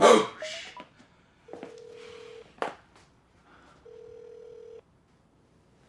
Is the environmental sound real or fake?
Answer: real